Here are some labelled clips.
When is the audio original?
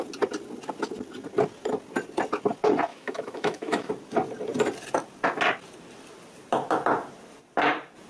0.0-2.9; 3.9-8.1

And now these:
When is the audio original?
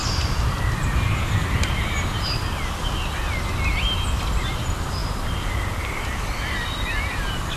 0.0-7.6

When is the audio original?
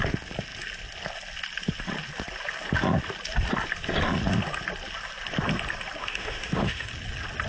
0.0-6.0; 6.9-7.5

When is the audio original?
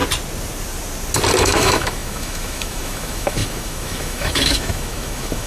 0.0-1.4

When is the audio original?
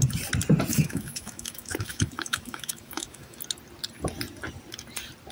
0.0-0.7; 3.4-5.3